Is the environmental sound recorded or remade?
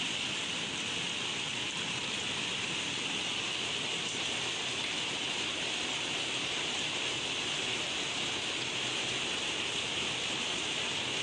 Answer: recorded